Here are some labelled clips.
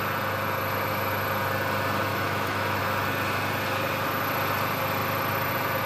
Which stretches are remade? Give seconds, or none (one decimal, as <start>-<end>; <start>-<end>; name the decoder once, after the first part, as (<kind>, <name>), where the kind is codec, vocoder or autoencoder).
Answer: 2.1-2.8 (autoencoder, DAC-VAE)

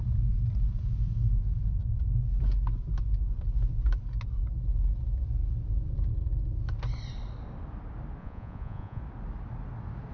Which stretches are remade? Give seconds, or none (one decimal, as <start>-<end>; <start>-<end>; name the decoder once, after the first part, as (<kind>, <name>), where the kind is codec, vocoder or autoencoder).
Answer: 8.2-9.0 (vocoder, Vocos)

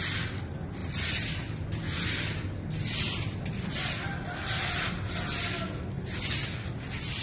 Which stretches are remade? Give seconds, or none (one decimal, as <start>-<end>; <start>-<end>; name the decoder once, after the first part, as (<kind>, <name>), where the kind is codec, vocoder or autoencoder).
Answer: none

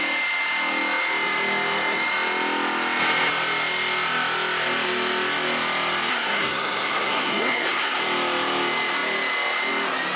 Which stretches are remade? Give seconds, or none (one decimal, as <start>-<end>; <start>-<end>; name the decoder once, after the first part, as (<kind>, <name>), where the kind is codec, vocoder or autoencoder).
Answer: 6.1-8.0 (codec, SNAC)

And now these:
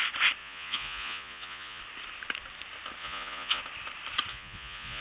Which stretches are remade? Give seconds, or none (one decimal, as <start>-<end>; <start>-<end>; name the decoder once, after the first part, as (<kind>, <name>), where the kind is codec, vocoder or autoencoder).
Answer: 0.4-1.8 (vocoder, Vocos); 3.0-3.6; 4.3-5.0